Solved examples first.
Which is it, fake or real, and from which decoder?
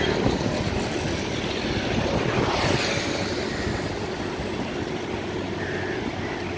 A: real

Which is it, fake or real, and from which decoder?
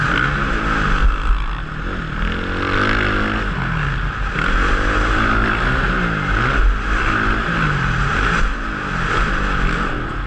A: real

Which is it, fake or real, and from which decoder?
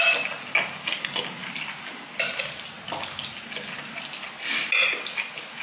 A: real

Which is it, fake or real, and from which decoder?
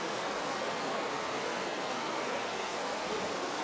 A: fake, codec, SNAC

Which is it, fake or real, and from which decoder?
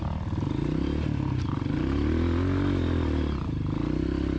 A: real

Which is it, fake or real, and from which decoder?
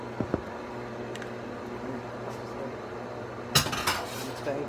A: real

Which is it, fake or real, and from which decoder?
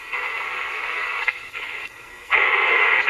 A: fake, codec, SNAC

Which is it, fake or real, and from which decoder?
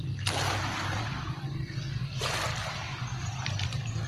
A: real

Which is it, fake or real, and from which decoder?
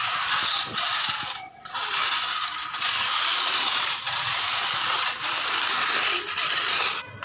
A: real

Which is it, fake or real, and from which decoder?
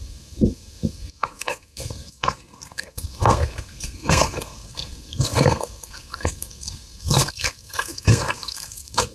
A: fake, codec, SNAC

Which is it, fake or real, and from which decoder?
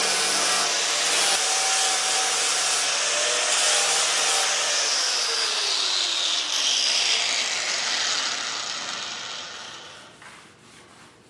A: real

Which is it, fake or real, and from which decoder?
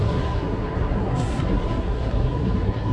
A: fake, codec, SNAC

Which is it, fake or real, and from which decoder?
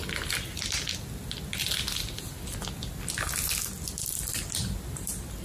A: real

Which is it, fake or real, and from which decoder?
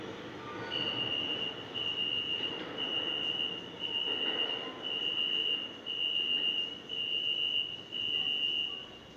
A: real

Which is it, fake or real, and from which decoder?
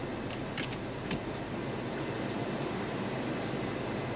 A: real